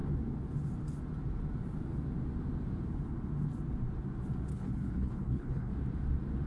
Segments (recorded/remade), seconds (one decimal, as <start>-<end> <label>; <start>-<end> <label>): 0.0-4.5 recorded; 4.5-5.7 remade; 5.7-6.5 recorded